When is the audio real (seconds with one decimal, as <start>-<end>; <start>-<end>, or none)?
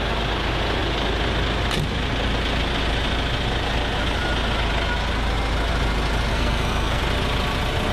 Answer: 0.0-6.3; 7.0-7.9